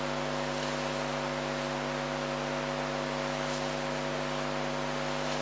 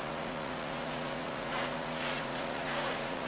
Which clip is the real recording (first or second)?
first